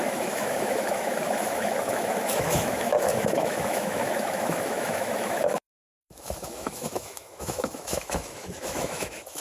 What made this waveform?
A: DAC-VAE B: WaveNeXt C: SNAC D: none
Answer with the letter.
A